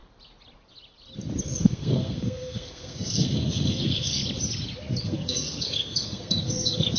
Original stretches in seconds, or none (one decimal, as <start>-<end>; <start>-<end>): 0.0-1.4; 4.2-5.0